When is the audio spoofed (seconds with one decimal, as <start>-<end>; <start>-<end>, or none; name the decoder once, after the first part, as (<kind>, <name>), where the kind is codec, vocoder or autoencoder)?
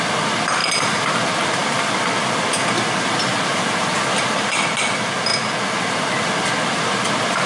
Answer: 0.0-5.3 (vocoder, BigVGAN v2); 5.9-7.5